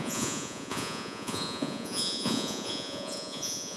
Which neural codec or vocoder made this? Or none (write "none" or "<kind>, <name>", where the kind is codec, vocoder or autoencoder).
vocoder, Vocos